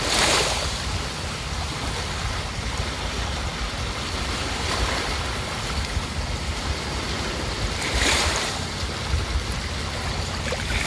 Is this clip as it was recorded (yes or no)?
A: yes